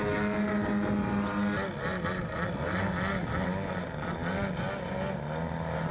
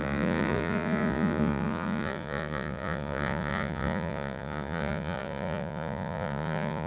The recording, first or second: first